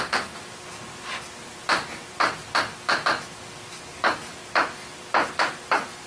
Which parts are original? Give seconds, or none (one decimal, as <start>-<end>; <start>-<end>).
0.0-6.1